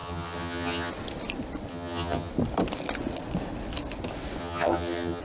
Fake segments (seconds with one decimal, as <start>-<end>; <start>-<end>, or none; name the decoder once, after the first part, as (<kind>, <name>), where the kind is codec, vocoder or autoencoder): 0.0-0.9 (vocoder, HiFi-GAN); 1.7-2.3; 4.4-5.2